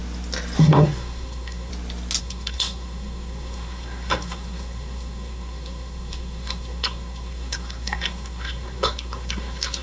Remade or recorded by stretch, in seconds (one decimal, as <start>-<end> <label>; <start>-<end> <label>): 0.0-0.6 recorded; 0.6-1.7 remade; 1.7-2.2 recorded; 2.2-9.8 remade